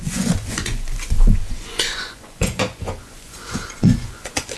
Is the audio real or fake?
fake